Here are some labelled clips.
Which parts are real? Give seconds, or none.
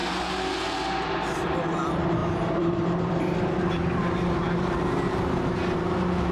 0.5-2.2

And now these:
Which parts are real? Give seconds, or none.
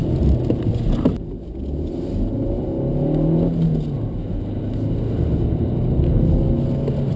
0.0-7.2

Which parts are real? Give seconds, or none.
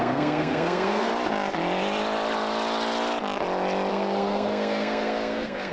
1.1-3.9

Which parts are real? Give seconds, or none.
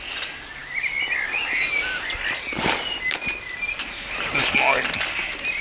0.0-5.6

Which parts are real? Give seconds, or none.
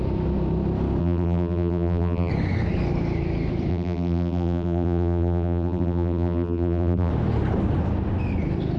0.0-1.0; 2.3-3.7; 7.1-8.8